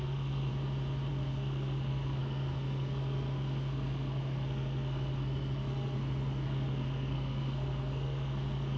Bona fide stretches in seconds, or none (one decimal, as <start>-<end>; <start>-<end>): 0.5-1.1